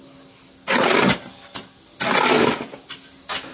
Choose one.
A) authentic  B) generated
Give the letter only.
A